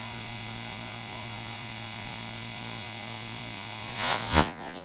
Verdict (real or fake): fake